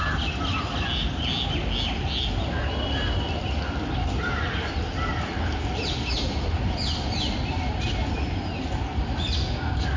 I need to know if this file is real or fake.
real